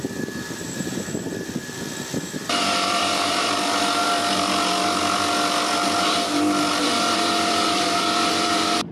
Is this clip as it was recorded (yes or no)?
no